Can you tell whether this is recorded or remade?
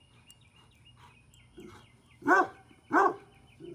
recorded